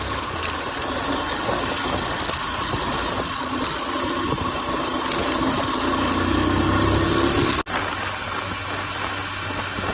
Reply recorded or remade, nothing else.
recorded